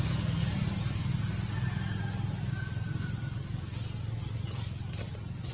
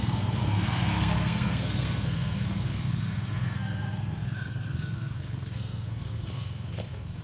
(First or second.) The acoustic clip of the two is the first